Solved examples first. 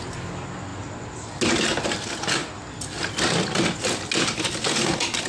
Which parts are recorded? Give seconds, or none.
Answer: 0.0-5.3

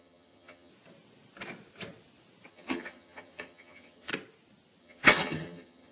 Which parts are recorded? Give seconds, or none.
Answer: 0.7-2.5; 4.1-4.8

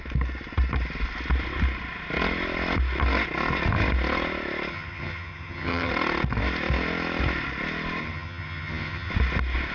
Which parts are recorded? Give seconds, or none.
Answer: 0.0-4.7; 5.9-8.0; 9.1-9.7

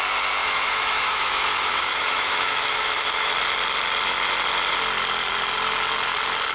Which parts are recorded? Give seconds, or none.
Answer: 0.0-0.4; 3.3-6.5

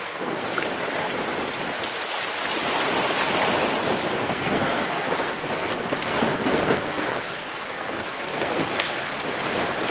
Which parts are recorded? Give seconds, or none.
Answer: 0.5-4.2; 9.0-9.9